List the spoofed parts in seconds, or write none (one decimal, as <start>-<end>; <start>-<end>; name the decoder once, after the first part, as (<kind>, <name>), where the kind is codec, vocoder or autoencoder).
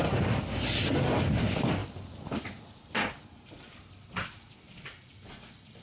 none